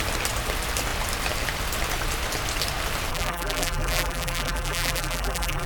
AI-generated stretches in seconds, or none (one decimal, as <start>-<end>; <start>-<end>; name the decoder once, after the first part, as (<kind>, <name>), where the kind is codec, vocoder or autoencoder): 3.1-5.7 (vocoder, BigVGAN v2)